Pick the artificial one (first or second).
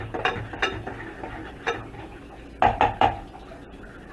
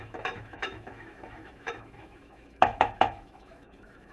second